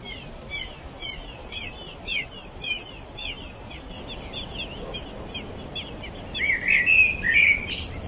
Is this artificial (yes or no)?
no